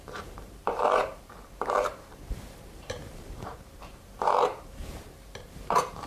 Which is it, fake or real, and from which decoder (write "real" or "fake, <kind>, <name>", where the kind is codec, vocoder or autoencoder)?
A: fake, vocoder, BigVGAN v2